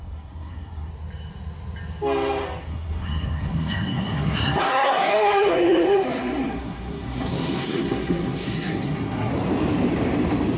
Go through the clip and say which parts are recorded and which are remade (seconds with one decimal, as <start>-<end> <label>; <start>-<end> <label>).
0.0-0.9 remade; 0.9-2.6 recorded; 2.6-9.3 remade; 9.3-10.6 recorded